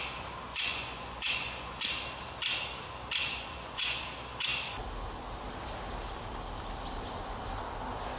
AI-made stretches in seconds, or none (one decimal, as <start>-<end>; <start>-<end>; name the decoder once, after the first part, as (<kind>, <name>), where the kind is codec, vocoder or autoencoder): 0.5-1.9 (vocoder, Vocos); 3.2-4.0